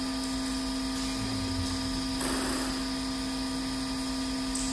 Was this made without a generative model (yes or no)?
yes